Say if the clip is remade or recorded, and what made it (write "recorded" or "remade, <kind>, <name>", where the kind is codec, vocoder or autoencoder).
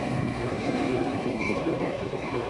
remade, codec, SNAC